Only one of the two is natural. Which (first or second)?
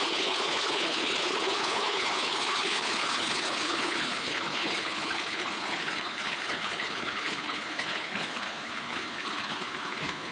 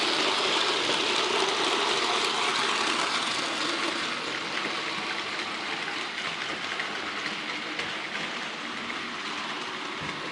second